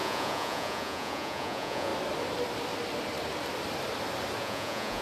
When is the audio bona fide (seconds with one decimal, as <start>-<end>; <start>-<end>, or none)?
1.9-4.4